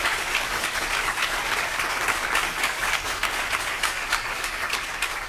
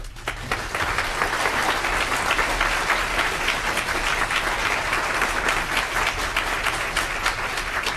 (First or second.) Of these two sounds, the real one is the second